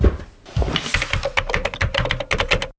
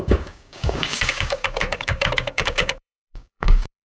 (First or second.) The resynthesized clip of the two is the second